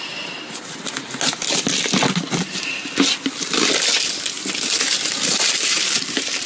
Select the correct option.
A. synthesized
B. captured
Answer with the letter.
B